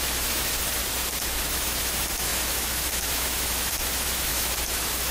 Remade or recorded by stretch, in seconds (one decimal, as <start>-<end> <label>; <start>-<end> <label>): 0.0-0.8 remade; 0.8-1.5 recorded; 1.5-5.1 remade